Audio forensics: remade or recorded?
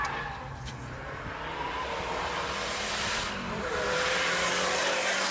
recorded